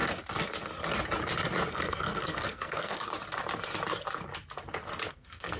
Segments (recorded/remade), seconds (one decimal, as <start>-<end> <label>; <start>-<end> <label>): 0.0-1.7 recorded; 1.7-3.1 remade; 3.1-5.1 recorded; 5.1-5.6 remade